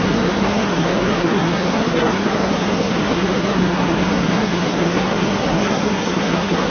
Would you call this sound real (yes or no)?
no